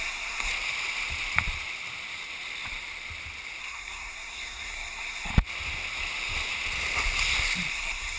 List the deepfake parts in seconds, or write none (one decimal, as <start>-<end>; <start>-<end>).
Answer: 0.0-0.5; 3.6-5.3; 7.7-8.2